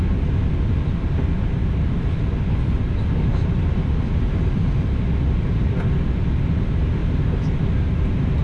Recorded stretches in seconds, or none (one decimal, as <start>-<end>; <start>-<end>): 0.0-3.3; 4.2-7.0; 7.6-8.4